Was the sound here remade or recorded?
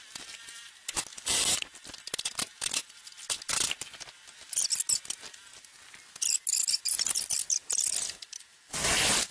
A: recorded